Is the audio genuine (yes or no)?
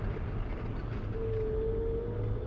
yes